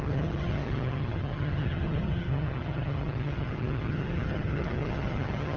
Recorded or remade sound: remade